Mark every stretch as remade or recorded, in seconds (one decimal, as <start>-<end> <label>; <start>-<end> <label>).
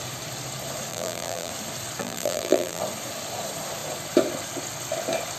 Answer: 0.0-0.9 recorded; 0.9-1.5 remade; 1.5-2.0 recorded; 2.0-2.8 remade; 2.8-5.4 recorded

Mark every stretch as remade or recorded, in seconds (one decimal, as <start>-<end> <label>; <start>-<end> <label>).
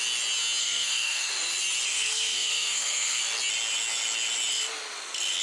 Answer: 0.0-0.6 recorded; 0.6-1.3 remade; 1.3-1.9 recorded; 1.9-3.2 remade; 3.2-5.4 recorded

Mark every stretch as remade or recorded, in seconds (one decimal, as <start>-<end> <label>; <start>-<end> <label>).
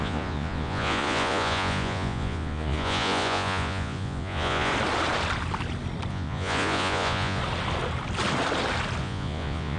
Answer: 0.0-4.7 remade; 4.7-6.1 recorded; 6.1-7.4 remade; 7.4-9.0 recorded; 9.0-9.8 remade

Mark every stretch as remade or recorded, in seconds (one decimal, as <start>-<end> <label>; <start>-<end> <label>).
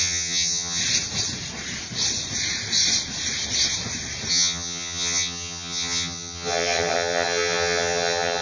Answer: 0.0-0.8 remade; 0.8-4.3 recorded; 4.3-8.4 remade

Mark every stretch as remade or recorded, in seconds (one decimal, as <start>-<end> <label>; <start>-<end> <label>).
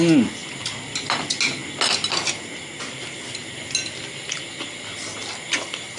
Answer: 0.0-6.0 recorded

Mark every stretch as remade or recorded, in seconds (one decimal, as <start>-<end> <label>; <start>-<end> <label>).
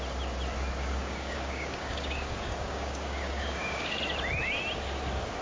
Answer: 0.0-0.8 recorded; 0.8-4.0 remade; 4.0-5.4 recorded